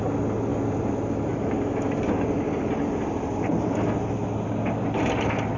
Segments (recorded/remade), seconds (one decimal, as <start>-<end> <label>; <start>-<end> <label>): 0.0-5.6 recorded